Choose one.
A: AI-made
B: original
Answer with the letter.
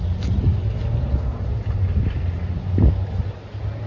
B